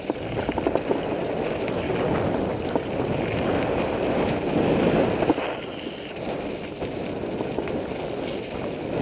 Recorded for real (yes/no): yes